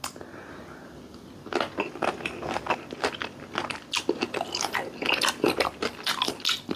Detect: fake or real real